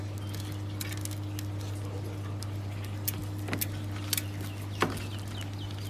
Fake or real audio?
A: real